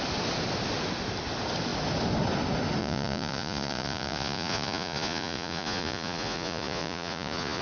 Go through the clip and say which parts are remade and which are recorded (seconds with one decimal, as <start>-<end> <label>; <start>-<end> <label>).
0.0-2.8 recorded; 2.8-7.6 remade